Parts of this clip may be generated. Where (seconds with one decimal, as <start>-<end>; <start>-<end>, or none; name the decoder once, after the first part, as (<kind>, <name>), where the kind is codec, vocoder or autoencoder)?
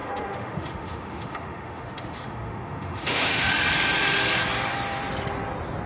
0.0-3.5 (autoencoder, DAC-VAE)